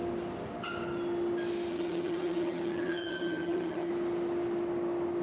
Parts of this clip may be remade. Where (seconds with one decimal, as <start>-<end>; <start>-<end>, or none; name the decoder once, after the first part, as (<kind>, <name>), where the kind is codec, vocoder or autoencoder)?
1.7-3.9 (vocoder, HiFi-GAN)